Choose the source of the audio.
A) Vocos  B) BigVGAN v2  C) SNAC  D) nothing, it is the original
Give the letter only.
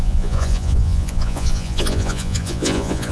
A